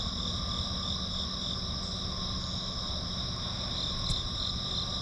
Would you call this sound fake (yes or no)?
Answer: no